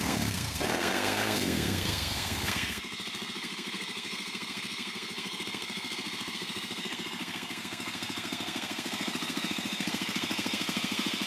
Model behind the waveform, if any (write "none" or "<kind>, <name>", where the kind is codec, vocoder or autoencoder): codec, SNAC